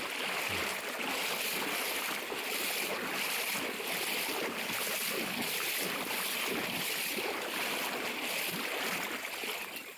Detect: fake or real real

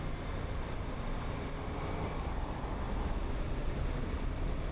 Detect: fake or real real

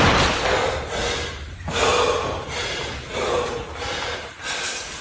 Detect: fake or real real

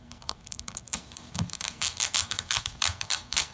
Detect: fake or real fake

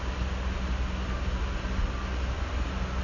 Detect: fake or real real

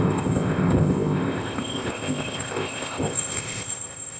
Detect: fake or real fake